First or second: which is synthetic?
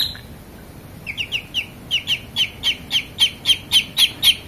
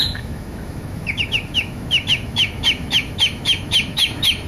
second